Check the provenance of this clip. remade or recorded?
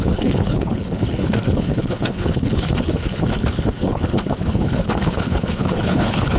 remade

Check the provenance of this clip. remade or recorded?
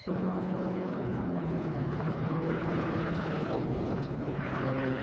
remade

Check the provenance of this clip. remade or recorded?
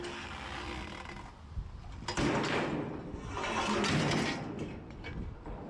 recorded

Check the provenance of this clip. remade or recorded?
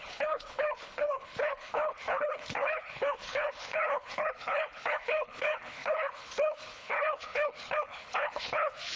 remade